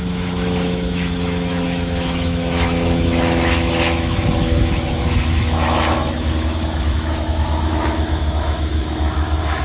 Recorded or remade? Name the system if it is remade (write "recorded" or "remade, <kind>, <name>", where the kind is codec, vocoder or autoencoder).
remade, autoencoder, DAC-VAE